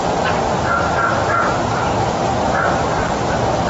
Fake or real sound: fake